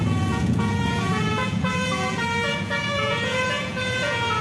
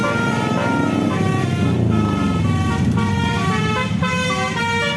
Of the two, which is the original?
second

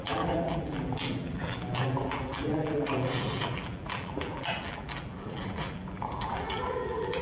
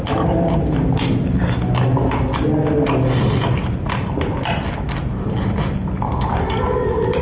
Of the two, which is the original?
second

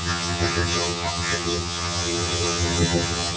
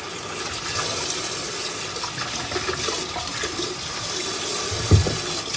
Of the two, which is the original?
second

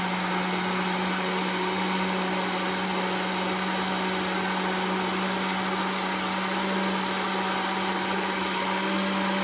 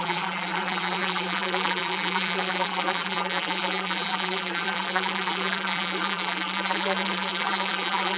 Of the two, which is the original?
first